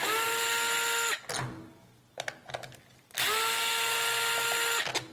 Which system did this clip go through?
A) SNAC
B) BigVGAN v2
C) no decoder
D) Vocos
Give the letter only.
C